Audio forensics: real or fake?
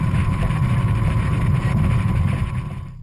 fake